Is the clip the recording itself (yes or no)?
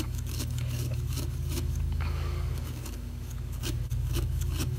no